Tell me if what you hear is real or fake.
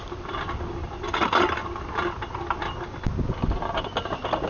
real